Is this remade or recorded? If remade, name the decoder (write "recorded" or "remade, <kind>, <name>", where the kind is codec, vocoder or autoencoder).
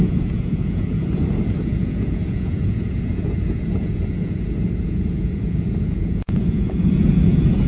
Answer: remade, vocoder, Vocos